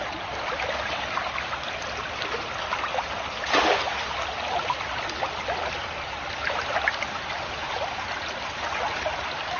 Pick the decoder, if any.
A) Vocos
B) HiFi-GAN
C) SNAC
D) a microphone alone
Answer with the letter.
D